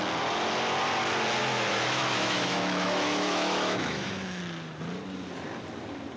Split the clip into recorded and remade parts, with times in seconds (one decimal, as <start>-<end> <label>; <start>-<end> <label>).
0.0-1.4 recorded; 1.4-4.4 remade; 4.4-6.2 recorded